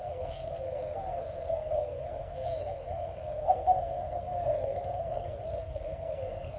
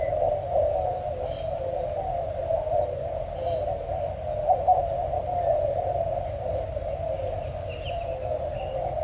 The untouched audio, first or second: second